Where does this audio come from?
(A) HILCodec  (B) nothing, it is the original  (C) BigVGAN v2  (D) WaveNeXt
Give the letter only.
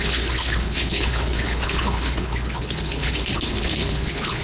A